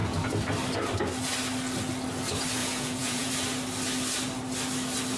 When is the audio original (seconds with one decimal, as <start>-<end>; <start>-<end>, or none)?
0.0-2.6; 3.3-5.2